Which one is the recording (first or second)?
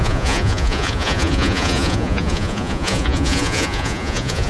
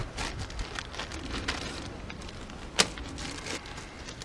second